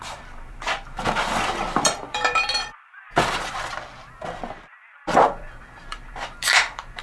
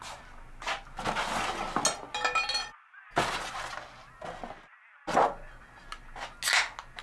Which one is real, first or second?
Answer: second